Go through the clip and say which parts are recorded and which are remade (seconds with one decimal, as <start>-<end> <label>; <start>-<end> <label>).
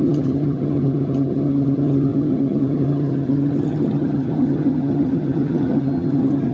0.0-6.5 remade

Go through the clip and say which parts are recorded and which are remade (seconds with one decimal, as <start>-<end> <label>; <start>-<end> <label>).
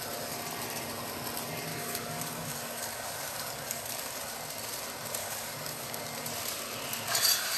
0.0-1.7 recorded; 1.7-4.2 remade; 4.2-5.2 recorded; 5.2-6.0 remade; 6.0-7.6 recorded